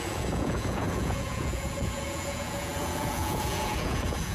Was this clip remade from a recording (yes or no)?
yes